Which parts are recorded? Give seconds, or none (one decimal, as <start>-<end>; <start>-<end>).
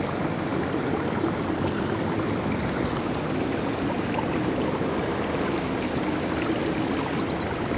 0.0-7.8